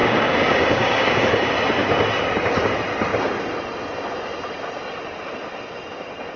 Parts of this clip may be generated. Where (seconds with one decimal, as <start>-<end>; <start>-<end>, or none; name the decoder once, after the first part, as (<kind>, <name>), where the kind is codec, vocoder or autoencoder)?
0.0-1.2 (codec, DAC)